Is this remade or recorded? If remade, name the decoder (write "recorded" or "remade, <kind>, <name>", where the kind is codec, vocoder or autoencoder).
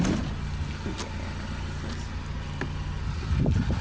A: recorded